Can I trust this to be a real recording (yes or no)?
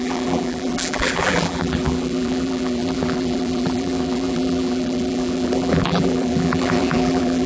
no